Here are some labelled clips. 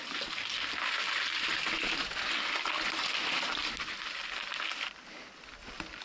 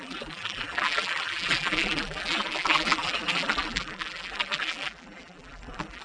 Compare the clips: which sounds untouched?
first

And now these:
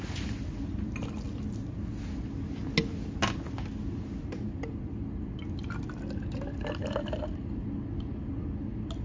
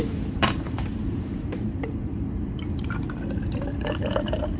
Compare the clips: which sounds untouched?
first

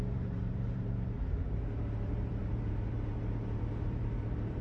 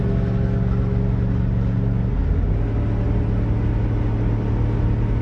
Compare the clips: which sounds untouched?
second